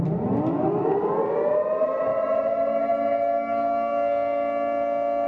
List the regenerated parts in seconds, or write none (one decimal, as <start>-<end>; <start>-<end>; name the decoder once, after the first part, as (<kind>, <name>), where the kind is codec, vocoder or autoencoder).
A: none

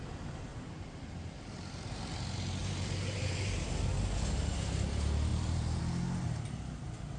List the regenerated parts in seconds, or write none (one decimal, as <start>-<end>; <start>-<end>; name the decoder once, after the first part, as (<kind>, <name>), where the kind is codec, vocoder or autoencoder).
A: 0.5-2.0 (vocoder, BigVGAN v2); 2.6-3.9; 5.3-5.8

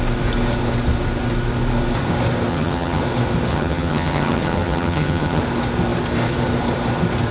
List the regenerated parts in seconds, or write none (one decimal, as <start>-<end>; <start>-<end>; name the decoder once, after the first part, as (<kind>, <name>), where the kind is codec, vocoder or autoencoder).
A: 2.5-3.0 (vocoder, HiFi-GAN); 3.5-5.4

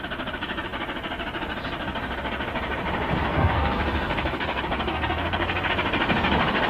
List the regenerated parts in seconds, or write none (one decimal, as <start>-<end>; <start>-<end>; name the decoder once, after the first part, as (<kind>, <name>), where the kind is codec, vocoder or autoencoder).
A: 3.3-5.7 (codec, SNAC)

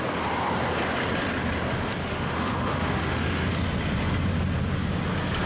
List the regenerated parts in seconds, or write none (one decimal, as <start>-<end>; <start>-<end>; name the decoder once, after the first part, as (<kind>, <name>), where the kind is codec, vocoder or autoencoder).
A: 2.0-3.5 (autoencoder, DAC-VAE)

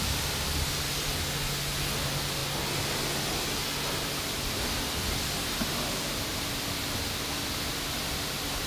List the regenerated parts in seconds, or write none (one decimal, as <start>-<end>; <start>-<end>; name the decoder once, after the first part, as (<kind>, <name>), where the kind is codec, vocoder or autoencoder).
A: none

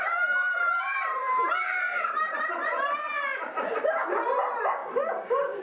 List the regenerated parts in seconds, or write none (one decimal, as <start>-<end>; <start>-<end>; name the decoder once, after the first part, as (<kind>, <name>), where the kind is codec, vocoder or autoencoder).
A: 0.0-4.8 (vocoder, BigVGAN v2)

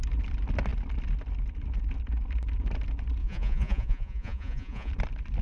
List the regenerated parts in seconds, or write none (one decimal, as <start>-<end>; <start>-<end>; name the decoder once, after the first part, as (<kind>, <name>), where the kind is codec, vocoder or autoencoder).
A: 3.2-4.9 (vocoder, Vocos)